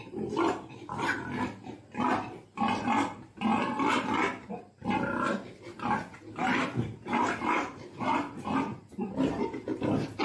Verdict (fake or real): real